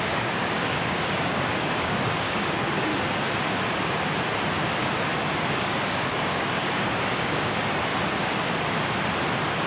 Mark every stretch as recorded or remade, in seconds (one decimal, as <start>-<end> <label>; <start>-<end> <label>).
0.0-2.9 remade; 2.9-5.5 recorded; 5.5-7.9 remade; 7.9-9.7 recorded